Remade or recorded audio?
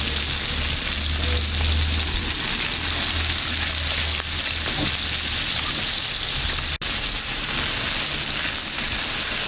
recorded